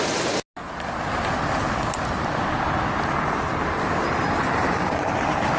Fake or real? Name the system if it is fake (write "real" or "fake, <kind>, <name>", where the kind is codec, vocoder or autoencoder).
real